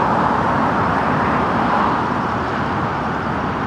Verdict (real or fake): real